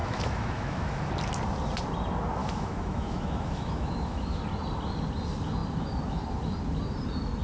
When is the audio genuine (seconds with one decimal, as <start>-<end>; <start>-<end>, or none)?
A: 1.1-2.4; 4.4-7.4